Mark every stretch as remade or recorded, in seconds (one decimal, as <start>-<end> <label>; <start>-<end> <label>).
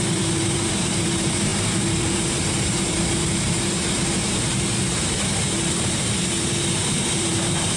0.0-7.8 remade